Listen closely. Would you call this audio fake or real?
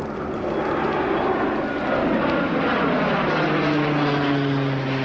real